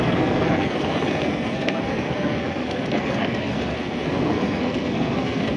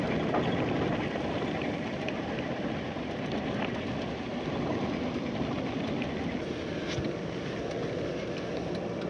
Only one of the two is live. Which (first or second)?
second